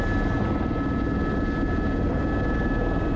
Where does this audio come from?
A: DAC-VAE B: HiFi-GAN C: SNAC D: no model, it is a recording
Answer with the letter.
D